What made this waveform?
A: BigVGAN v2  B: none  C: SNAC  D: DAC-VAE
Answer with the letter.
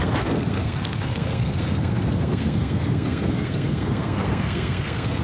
C